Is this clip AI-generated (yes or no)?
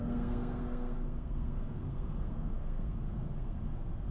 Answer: yes